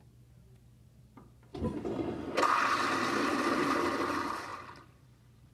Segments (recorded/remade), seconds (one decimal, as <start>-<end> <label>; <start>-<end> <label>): 0.0-1.5 recorded; 1.5-3.8 remade; 3.8-4.5 recorded; 4.5-5.5 remade